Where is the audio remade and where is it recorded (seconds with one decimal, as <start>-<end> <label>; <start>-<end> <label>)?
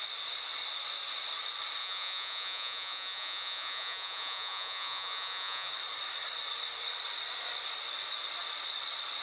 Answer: 0.0-1.8 recorded; 1.8-5.7 remade; 5.7-9.2 recorded